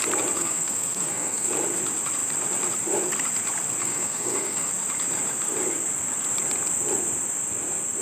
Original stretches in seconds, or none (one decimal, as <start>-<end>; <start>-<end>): 0.0-0.4; 1.5-3.8; 4.7-8.0

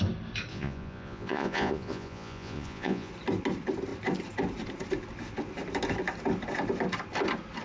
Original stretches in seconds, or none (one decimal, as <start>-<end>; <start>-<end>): 0.0-0.5; 3.1-7.6

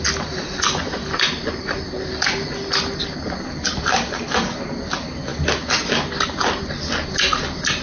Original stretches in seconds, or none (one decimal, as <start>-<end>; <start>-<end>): 0.0-7.8

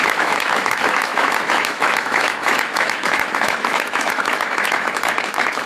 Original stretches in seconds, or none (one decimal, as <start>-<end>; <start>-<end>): none

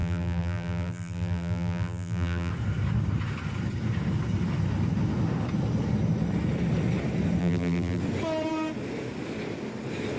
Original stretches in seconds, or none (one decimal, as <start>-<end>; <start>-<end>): 2.5-7.4; 8.0-10.2

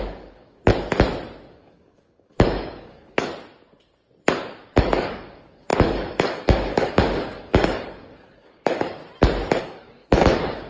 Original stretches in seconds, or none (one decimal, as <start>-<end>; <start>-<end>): 0.7-1.5; 3.3-4.3; 9.0-9.6

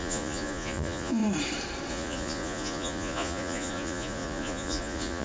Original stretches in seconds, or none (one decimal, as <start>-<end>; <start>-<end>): 1.2-1.9

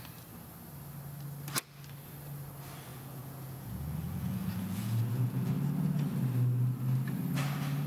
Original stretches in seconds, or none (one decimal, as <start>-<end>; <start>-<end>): 0.0-2.9; 5.5-7.9